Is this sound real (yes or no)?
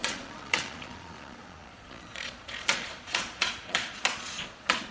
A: no